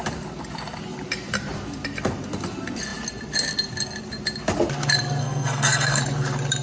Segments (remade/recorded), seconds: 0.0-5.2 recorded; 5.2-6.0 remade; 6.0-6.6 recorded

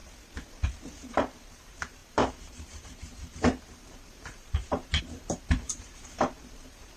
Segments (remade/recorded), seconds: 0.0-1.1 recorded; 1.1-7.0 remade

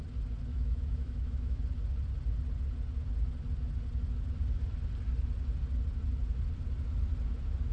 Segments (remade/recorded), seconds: 0.0-0.5 recorded; 0.5-1.6 remade; 1.6-7.7 recorded

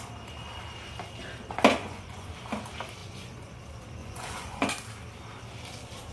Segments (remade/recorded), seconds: 0.0-1.8 recorded; 1.8-2.3 remade; 2.3-3.0 recorded; 3.0-3.6 remade; 3.6-4.0 recorded; 4.0-4.7 remade; 4.7-6.1 recorded